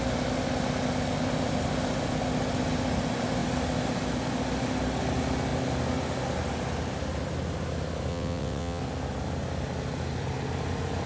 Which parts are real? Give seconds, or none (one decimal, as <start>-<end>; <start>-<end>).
0.0-8.1; 8.8-11.1

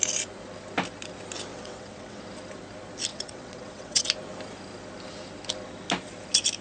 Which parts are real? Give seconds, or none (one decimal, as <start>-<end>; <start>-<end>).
0.0-1.5; 2.2-3.1; 4.0-6.6

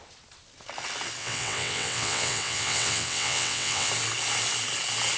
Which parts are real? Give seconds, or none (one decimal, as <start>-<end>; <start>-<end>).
0.0-1.2; 3.9-5.2

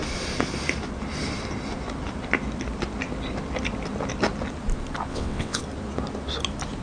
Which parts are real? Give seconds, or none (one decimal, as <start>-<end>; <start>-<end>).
0.0-5.1; 5.6-6.8

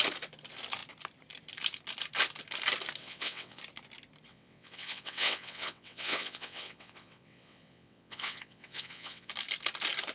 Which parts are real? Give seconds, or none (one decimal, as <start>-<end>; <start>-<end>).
0.0-3.0; 3.6-4.3; 9.3-10.1

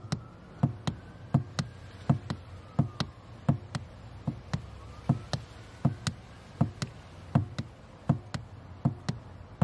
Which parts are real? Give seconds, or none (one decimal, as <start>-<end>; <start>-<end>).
0.0-9.6

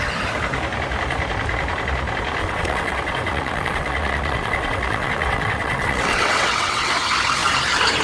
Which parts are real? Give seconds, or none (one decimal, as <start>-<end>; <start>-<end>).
0.0-2.4; 6.9-8.0